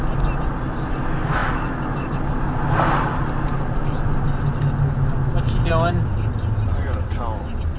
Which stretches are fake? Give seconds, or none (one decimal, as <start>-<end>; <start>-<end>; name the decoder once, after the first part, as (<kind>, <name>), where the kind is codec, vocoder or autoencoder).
none